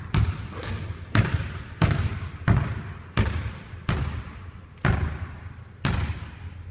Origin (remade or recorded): recorded